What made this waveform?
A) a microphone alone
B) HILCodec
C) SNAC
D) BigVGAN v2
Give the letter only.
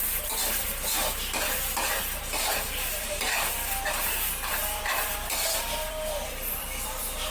D